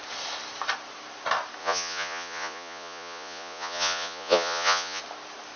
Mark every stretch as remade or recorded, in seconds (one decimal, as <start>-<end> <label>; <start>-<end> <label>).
0.0-1.6 recorded; 1.6-5.0 remade; 5.0-5.6 recorded